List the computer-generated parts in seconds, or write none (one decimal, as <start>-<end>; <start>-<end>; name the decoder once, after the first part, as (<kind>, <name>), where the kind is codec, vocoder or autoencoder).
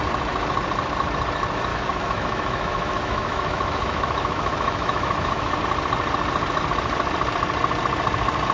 1.7-5.6 (autoencoder, DAC-VAE)